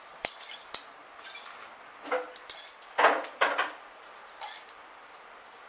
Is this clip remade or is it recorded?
recorded